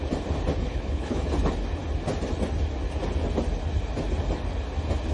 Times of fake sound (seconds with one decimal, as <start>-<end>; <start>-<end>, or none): 0.6-1.2

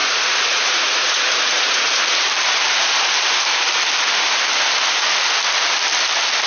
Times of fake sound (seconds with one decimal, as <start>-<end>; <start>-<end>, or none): 0.0-2.0

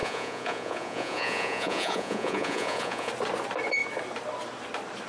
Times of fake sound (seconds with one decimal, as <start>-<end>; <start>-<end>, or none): 0.0-3.1

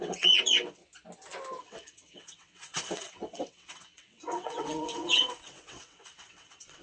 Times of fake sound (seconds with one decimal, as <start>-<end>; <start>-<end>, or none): 0.0-0.8; 1.6-6.8